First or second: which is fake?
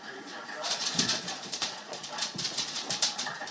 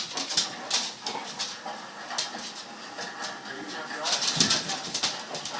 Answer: first